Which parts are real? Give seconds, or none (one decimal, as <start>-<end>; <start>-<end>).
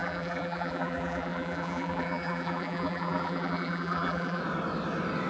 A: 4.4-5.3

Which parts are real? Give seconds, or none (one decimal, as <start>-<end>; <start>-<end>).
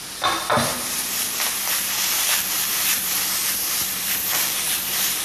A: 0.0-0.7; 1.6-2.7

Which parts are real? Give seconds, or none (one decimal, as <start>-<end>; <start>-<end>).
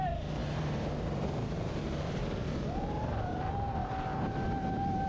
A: none